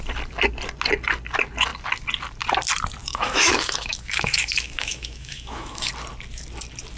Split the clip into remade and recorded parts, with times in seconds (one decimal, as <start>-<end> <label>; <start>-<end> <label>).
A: 0.0-3.0 recorded; 3.0-5.9 remade; 5.9-7.0 recorded